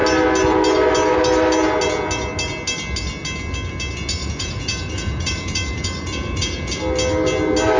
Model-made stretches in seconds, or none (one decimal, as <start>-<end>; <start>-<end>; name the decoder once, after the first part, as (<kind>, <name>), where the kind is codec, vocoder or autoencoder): 4.2-6.8 (vocoder, Vocos)

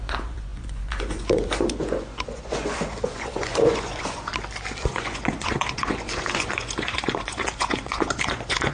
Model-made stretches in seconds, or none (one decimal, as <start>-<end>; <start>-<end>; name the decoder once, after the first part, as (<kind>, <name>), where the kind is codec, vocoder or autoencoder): 0.0-4.3 (vocoder, Vocos); 4.8-8.7